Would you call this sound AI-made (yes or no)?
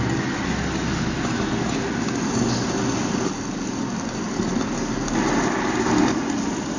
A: no